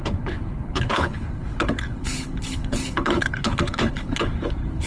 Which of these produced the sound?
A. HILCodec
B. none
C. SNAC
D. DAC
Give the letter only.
A